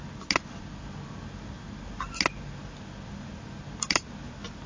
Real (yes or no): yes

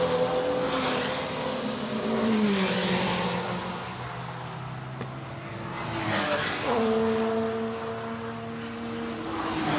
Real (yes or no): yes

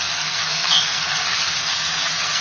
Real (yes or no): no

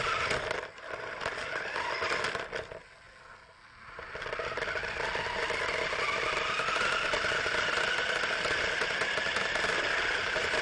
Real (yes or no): yes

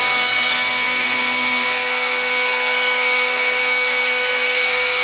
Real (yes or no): no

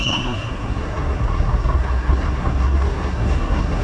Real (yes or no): no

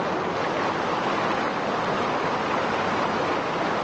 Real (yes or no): yes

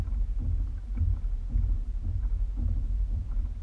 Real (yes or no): yes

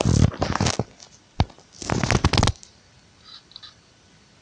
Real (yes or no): yes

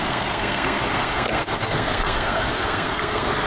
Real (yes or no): no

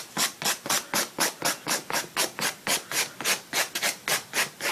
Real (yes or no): yes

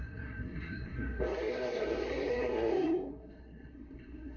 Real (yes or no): no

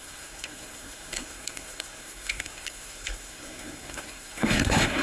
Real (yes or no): no